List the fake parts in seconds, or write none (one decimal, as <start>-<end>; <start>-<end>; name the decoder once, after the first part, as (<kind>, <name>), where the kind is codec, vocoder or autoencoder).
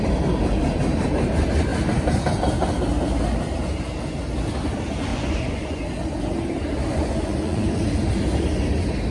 5.1-5.8 (vocoder, Vocos); 6.9-7.8